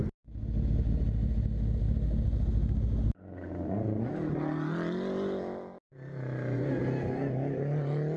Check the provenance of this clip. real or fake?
real